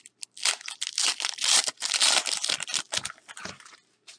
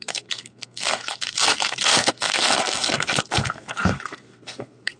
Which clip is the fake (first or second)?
second